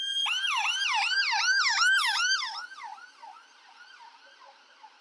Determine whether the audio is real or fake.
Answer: fake